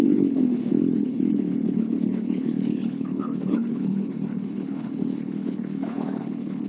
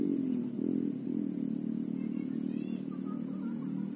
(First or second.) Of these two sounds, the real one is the second